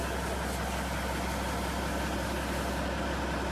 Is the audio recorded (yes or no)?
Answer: yes